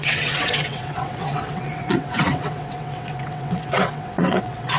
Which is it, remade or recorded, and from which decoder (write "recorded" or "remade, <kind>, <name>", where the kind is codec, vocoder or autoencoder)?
remade, vocoder, WaveNeXt